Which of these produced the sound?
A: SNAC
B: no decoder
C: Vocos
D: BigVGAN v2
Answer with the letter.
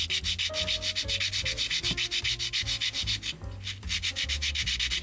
B